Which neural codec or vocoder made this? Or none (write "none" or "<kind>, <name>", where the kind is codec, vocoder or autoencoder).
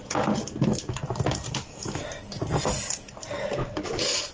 none